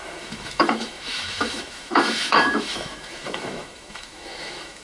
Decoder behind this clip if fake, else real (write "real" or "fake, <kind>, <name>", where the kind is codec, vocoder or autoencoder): fake, autoencoder, DAC-VAE